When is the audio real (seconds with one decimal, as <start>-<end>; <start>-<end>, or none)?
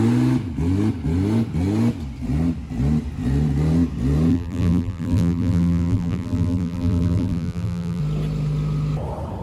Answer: 0.0-4.3; 8.0-9.4